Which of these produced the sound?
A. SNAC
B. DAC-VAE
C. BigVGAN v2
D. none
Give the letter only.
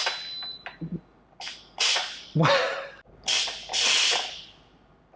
D